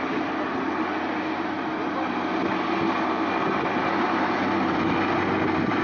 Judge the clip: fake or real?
real